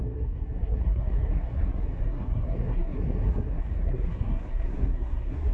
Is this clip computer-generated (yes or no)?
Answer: yes